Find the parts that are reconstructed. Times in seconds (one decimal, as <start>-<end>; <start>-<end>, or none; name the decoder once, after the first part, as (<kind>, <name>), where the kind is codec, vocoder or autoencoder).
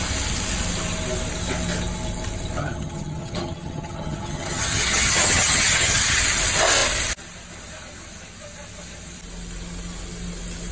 2.6-6.2 (vocoder, HiFi-GAN)